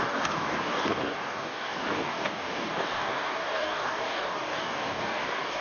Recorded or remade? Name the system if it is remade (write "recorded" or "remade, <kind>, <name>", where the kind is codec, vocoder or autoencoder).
remade, codec, DAC